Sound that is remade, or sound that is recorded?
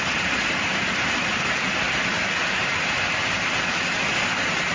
recorded